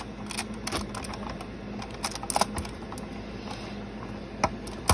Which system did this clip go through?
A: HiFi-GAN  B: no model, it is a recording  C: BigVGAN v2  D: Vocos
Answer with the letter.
B